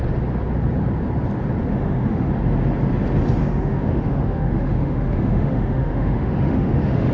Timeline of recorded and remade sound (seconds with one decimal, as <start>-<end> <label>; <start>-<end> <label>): 0.0-1.7 recorded; 1.7-2.3 remade; 2.3-3.4 recorded; 3.4-7.1 remade